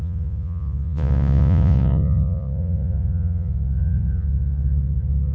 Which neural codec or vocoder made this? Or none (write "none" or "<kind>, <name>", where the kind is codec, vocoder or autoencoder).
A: vocoder, Vocos